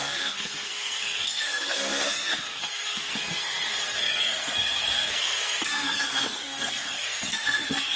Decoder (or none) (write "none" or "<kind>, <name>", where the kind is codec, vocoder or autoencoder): codec, SNAC